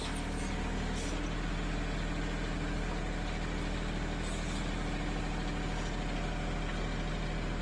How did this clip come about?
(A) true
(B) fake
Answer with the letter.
A